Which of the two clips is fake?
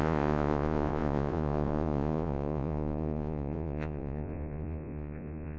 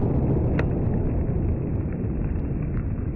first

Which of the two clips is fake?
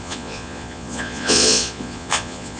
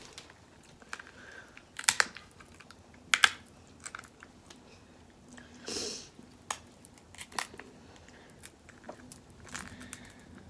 first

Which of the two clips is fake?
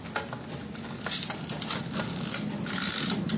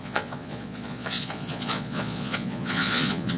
second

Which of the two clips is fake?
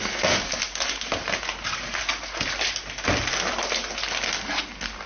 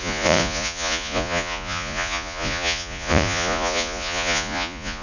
second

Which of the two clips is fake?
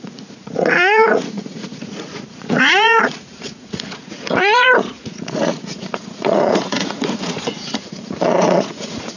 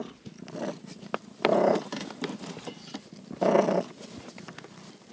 first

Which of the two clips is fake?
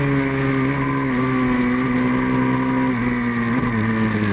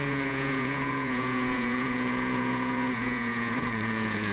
second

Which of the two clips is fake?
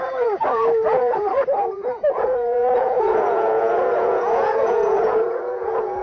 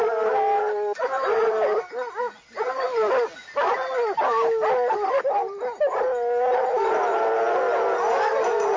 first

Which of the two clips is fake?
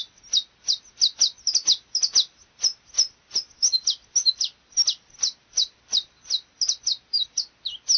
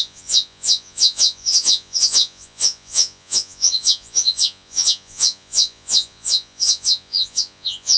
second